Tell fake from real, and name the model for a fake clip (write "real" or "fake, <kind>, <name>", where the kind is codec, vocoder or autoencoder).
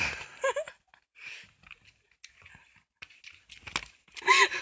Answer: real